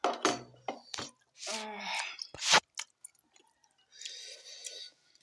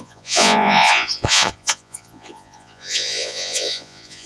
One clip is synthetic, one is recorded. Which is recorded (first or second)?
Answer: first